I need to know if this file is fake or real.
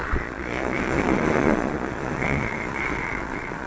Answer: fake